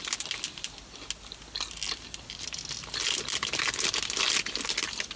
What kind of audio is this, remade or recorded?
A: recorded